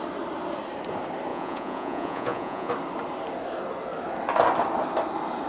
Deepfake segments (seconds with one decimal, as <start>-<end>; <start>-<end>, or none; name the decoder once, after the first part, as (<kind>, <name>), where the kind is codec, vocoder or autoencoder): 1.3-2.7 (vocoder, Vocos)